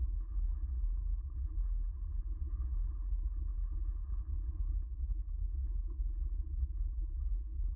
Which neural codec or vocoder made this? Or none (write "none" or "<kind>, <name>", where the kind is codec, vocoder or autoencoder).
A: codec, HILCodec